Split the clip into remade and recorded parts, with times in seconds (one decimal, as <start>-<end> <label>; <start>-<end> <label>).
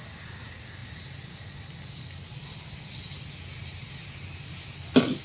0.0-5.2 recorded